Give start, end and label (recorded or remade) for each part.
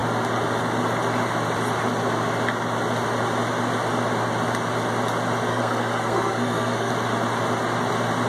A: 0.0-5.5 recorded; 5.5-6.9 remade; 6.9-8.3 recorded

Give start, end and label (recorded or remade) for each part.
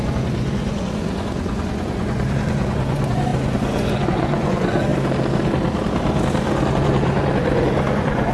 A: 0.0-4.9 remade; 4.9-6.7 recorded; 6.7-8.3 remade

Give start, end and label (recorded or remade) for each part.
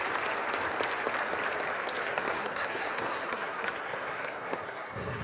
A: 0.0-2.1 recorded; 2.1-5.2 remade